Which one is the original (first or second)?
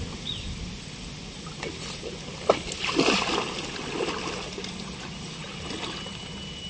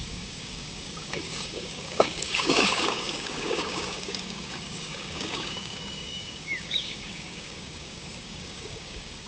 first